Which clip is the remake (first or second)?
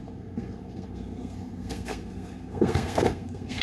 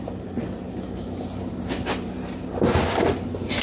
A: first